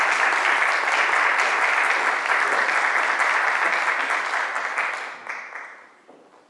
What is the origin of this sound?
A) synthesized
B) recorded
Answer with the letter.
B